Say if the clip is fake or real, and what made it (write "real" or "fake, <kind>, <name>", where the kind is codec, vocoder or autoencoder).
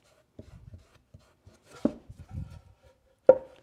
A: real